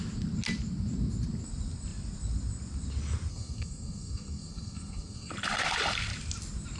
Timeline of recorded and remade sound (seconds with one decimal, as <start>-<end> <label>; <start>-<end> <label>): 0.0-3.3 recorded; 3.3-5.3 remade; 5.3-6.8 recorded